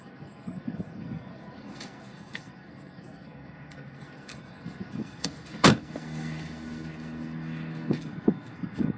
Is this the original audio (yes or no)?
no